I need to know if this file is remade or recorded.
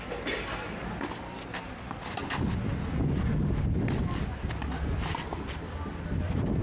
recorded